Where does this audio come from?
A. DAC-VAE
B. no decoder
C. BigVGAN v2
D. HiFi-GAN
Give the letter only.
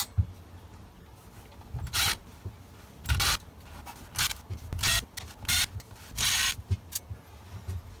B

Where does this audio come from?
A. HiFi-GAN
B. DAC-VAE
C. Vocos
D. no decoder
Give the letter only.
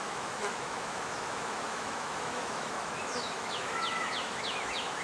B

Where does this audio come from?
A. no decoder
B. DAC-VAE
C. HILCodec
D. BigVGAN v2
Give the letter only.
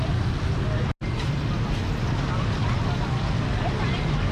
A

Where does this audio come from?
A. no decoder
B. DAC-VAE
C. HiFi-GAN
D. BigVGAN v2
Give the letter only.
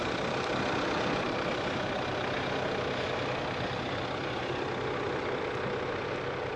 A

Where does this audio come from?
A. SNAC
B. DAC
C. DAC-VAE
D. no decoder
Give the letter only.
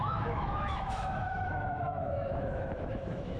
C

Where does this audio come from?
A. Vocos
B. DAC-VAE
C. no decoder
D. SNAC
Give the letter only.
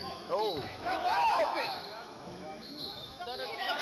B